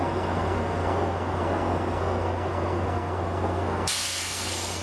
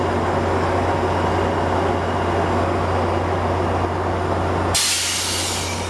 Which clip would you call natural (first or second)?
second